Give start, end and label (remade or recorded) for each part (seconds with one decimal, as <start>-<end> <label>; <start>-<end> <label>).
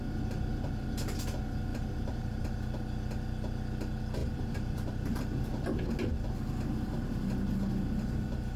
0.0-1.7 recorded; 1.7-2.6 remade; 2.6-4.2 recorded; 4.2-5.2 remade; 5.2-8.6 recorded